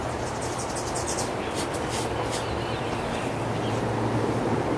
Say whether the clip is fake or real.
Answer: fake